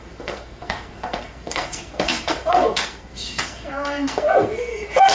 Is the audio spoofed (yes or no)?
yes